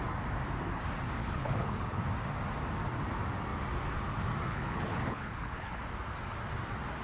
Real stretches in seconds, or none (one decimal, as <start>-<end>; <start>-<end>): 0.0-1.2; 2.0-4.5; 5.8-7.0